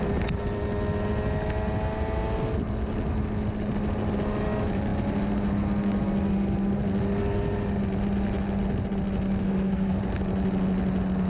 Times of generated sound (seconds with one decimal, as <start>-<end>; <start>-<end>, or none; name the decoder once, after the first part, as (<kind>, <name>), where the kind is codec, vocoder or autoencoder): 9.4-10.0 (codec, SNAC)